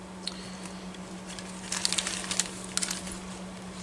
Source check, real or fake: real